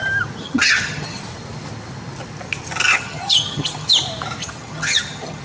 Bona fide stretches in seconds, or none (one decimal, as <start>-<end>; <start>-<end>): 0.0-0.4; 1.2-2.9; 3.9-4.4